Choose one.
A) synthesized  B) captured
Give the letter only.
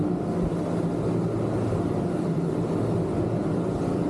B